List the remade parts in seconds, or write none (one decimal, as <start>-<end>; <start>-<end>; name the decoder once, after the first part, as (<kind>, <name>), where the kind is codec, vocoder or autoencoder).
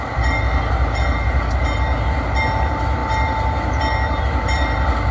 none